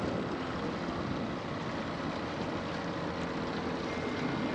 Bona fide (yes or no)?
yes